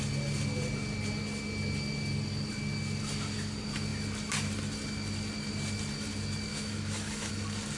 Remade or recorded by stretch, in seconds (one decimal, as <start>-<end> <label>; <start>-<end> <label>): 0.0-6.5 recorded; 6.5-7.3 remade; 7.3-7.8 recorded